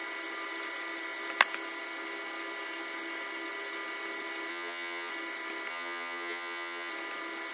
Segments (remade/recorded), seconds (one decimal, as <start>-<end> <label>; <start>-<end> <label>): 0.0-4.5 recorded; 4.5-5.1 remade; 5.1-5.7 recorded; 5.7-6.9 remade; 6.9-7.5 recorded